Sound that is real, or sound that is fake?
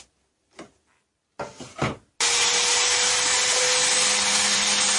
real